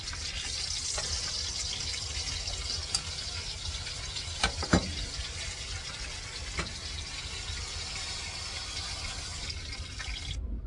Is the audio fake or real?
real